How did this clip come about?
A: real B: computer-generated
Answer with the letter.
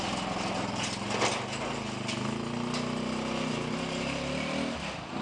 A